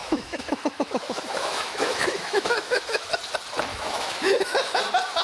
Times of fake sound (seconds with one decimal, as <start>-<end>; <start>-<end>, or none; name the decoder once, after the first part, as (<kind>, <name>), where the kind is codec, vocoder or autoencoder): 0.0-3.1 (autoencoder, DAC-VAE); 3.7-4.8